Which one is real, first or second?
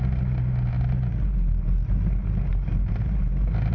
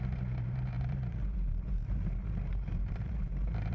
first